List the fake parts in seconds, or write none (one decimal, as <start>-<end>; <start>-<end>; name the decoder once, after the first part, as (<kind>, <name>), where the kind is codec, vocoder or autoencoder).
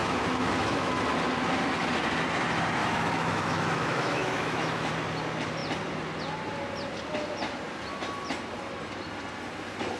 0.0-1.0 (autoencoder, DAC-VAE); 2.8-4.9